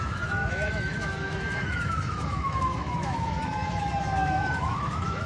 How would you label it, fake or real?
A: fake